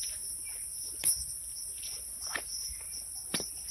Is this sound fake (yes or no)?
yes